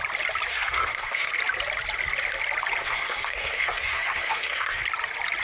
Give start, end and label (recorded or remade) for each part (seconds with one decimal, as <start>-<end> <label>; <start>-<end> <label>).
0.0-0.5 recorded; 0.5-1.3 remade; 1.3-2.8 recorded; 2.8-4.8 remade; 4.8-5.4 recorded